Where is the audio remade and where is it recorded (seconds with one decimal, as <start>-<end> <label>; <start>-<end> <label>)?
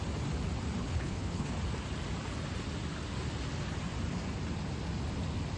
0.0-0.8 recorded; 0.8-1.5 remade; 1.5-5.6 recorded